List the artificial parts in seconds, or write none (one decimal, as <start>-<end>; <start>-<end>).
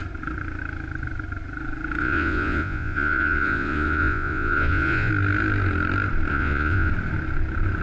2.0-5.1; 6.3-6.9